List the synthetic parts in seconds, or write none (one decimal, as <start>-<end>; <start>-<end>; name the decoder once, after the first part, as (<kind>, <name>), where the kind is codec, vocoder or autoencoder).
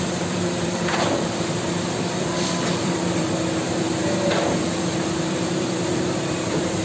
0.0-6.8 (vocoder, BigVGAN v2)